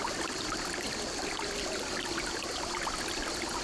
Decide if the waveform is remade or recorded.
recorded